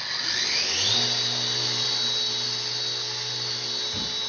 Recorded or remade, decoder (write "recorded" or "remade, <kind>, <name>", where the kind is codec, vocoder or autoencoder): recorded